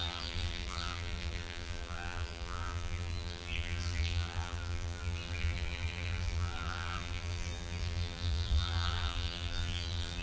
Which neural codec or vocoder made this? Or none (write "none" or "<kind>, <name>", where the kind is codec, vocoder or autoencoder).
vocoder, BigVGAN v2